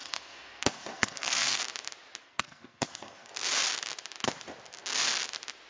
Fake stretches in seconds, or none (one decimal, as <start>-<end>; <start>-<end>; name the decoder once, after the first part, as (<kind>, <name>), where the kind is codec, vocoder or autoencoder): 0.0-1.6 (codec, SNAC); 2.2-3.3